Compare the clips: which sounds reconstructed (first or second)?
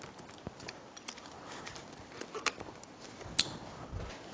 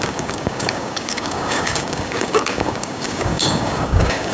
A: second